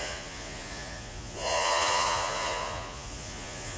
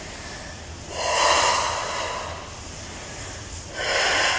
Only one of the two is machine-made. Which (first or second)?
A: first